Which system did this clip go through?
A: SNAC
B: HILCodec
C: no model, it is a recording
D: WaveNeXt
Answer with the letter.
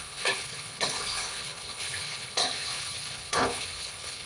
B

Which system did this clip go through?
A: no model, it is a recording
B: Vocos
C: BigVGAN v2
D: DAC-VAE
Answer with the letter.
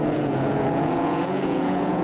B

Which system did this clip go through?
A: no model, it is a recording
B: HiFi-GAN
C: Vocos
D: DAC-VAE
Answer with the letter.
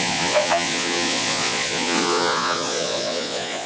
C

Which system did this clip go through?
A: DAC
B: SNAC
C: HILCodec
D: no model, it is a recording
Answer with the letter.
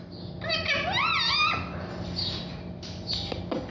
D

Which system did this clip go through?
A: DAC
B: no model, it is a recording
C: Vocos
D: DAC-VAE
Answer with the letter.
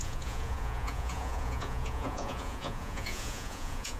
C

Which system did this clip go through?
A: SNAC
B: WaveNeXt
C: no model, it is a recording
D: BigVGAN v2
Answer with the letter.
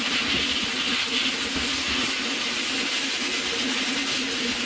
C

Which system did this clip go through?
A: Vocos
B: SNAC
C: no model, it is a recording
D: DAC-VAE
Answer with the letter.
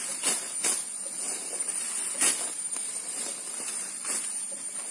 C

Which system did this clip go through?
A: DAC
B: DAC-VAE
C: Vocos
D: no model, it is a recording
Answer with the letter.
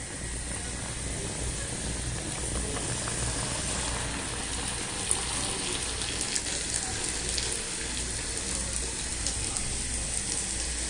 D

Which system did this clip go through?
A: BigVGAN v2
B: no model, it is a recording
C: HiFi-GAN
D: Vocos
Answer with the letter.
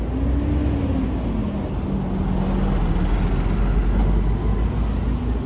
B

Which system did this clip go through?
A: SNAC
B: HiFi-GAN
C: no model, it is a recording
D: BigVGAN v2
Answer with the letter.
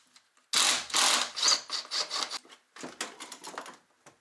C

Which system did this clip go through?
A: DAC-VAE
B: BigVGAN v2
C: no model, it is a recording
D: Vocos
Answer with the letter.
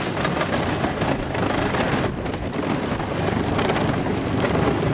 C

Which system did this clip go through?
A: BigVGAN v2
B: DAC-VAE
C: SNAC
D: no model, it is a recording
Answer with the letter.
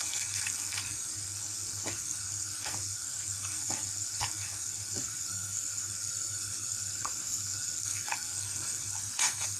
C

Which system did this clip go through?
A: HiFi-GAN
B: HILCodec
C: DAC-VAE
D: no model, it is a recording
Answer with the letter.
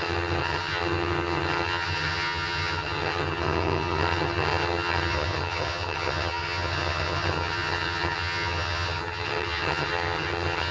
A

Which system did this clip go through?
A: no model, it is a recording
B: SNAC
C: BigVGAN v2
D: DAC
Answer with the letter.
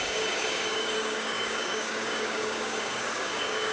D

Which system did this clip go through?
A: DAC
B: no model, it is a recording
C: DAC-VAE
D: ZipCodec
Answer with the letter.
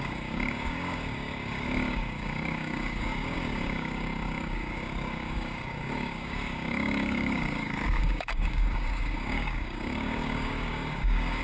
A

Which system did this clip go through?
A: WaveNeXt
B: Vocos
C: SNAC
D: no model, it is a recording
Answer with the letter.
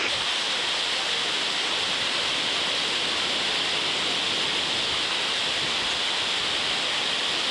D